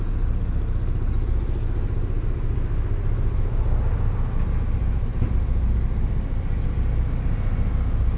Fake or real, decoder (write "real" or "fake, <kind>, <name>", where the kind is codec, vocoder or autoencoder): real